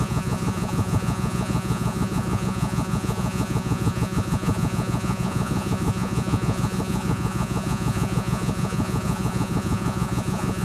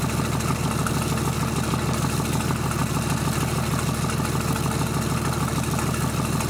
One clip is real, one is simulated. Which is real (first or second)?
second